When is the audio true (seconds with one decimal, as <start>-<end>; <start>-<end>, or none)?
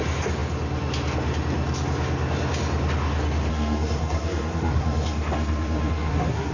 0.0-3.5